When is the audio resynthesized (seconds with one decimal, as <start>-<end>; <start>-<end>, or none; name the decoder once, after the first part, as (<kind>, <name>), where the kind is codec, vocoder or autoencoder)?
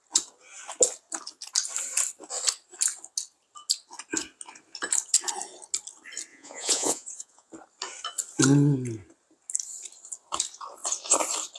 6.3-7.5 (vocoder, Vocos)